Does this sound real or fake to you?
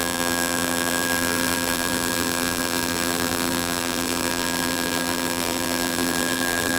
fake